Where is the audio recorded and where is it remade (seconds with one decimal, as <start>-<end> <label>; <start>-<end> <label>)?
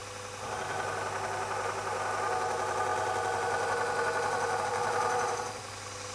0.0-6.1 recorded